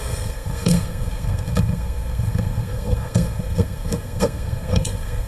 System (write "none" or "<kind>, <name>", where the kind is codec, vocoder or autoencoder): codec, SNAC